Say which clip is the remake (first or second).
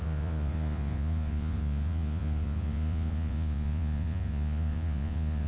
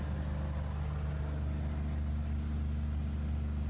first